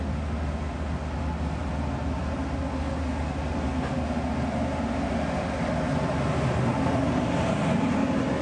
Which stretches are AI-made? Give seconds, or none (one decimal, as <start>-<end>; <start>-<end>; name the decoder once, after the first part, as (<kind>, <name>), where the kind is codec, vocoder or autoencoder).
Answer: none